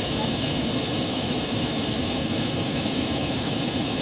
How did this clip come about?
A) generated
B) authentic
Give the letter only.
A